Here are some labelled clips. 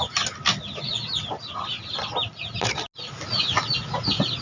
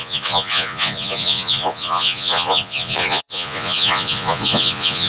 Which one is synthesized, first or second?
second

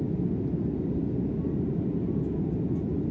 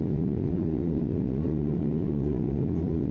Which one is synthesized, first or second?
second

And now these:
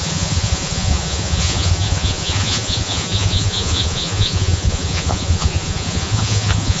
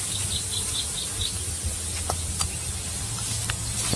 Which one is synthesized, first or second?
first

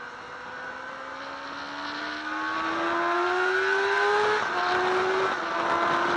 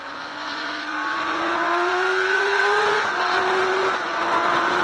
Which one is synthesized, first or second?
second